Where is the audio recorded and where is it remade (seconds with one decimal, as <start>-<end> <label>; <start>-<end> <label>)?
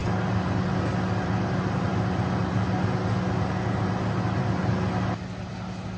0.0-6.0 recorded